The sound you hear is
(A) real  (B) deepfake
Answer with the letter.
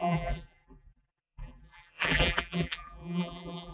B